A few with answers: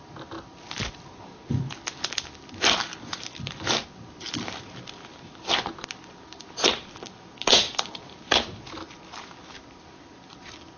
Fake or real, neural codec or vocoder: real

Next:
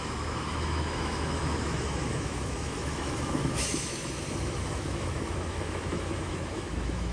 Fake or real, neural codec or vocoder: fake, autoencoder, DAC-VAE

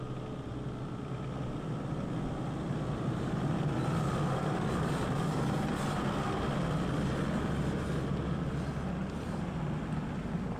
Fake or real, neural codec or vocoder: real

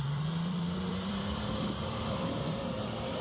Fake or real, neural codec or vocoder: fake, vocoder, BigVGAN v2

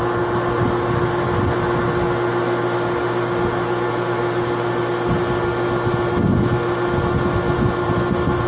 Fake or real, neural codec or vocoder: real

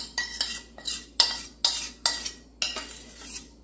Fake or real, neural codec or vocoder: real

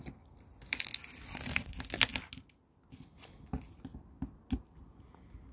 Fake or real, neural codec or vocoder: real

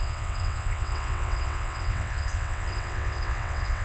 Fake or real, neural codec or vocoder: fake, vocoder, WaveNeXt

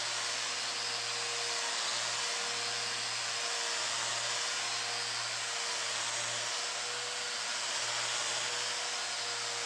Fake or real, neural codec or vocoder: real